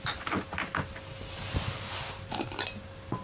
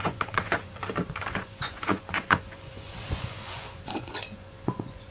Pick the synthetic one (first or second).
second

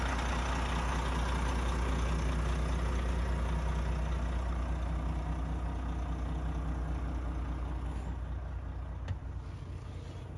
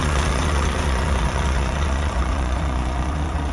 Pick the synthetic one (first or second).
second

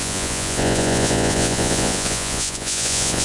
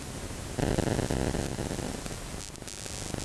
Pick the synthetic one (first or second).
first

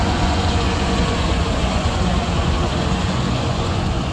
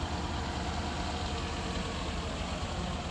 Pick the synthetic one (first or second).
first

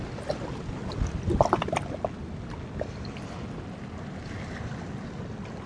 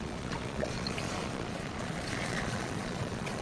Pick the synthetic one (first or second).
second